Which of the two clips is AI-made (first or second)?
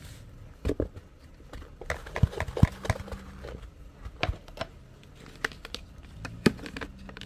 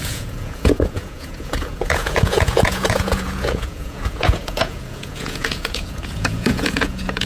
second